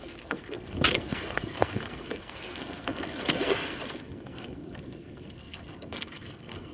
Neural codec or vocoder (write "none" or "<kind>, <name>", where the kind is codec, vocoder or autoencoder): codec, SNAC